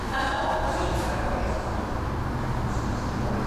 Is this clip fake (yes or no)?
no